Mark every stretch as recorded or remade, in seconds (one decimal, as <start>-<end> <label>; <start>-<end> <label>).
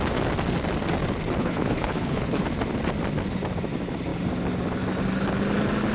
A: 0.0-1.4 recorded; 1.4-2.4 remade; 2.4-5.9 recorded